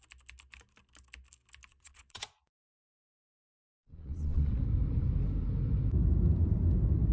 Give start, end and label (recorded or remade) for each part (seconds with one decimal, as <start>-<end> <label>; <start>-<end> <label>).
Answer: 0.0-1.7 recorded; 1.7-4.5 remade; 4.5-7.1 recorded

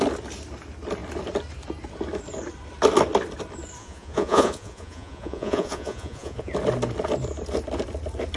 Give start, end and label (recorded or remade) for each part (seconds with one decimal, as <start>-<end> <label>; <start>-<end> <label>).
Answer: 0.0-3.8 recorded; 3.8-6.5 remade; 6.5-8.4 recorded

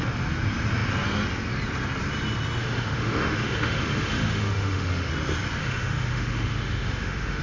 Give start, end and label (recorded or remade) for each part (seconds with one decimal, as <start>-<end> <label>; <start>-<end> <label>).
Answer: 0.0-2.6 recorded; 2.6-5.1 remade; 5.1-5.6 recorded; 5.6-7.4 remade

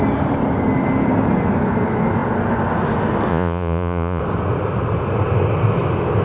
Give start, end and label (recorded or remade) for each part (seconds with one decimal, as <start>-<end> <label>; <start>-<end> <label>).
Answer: 0.0-3.3 recorded; 3.3-4.2 remade; 4.2-6.2 recorded

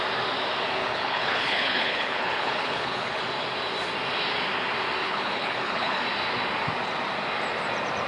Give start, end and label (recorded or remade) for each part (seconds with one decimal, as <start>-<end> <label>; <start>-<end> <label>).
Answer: 0.0-0.8 recorded; 0.8-3.2 remade; 3.2-5.0 recorded; 5.0-6.0 remade; 6.0-8.1 recorded